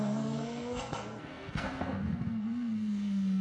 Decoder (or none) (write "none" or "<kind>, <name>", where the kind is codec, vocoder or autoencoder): codec, SNAC